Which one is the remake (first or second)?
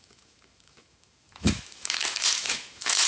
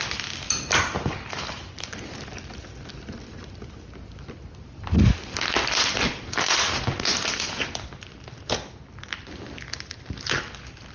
first